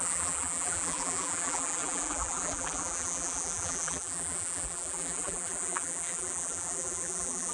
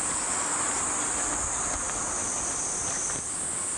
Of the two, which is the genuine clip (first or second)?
second